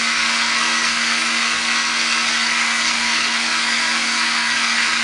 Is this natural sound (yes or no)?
no